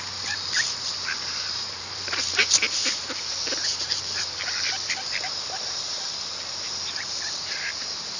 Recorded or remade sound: remade